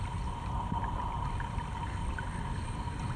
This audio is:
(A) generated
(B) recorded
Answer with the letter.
B